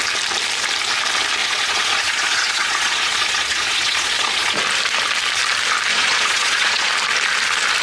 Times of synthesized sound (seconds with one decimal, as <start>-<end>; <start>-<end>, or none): 1.4-4.6; 5.9-6.9